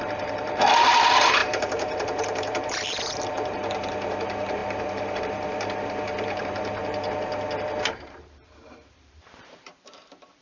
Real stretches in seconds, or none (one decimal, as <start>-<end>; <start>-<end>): 6.8-7.8